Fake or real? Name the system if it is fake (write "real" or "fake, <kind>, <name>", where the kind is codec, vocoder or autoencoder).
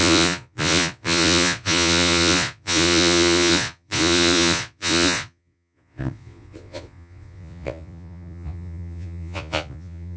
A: fake, vocoder, Vocos